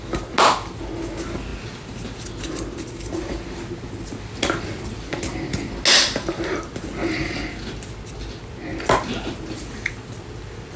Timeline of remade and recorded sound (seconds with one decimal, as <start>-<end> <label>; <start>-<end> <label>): 0.0-10.8 recorded